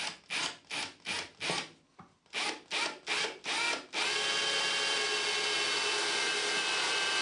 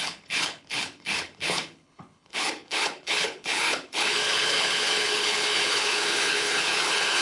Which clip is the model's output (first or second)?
second